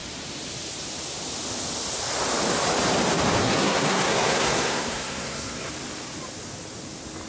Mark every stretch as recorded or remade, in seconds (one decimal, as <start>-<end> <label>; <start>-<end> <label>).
0.0-3.4 recorded; 3.4-5.7 remade; 5.7-7.3 recorded